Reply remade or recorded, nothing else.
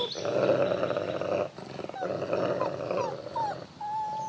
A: recorded